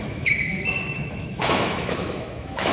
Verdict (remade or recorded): remade